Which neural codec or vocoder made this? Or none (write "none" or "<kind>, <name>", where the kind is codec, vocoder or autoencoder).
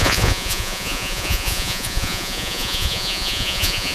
vocoder, Vocos